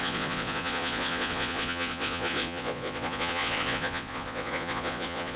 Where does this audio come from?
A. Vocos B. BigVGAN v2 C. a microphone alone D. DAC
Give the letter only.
A